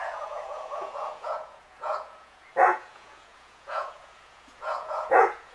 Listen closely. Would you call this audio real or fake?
fake